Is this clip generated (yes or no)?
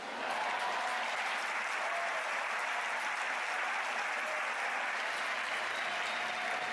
no